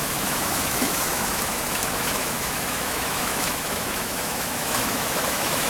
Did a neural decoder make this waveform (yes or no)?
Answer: yes